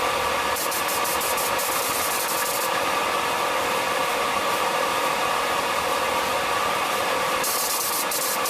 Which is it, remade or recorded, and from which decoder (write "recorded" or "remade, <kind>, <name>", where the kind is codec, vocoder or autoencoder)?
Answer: recorded